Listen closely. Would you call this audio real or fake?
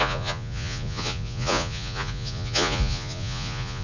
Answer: fake